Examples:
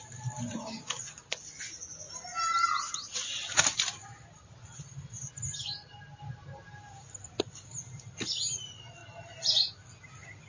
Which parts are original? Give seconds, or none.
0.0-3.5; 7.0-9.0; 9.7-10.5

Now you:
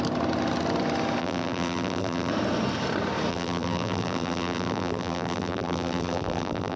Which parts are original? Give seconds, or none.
0.0-1.2; 2.3-3.3

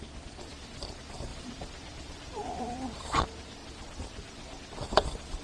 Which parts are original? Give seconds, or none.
0.0-1.3; 3.2-5.4

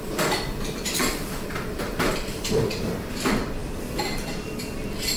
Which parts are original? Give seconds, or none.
none

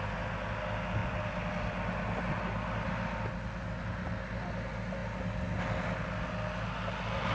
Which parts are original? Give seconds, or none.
0.0-5.0; 5.8-7.3

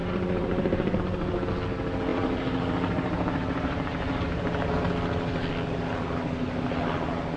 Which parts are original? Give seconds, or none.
1.0-2.1; 4.9-7.4

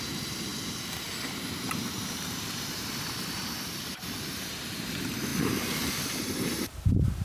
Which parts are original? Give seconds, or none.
none